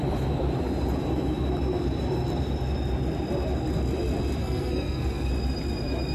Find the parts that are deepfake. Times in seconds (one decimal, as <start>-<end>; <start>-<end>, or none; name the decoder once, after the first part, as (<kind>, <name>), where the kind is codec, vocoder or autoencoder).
4.4-5.3 (codec, SNAC)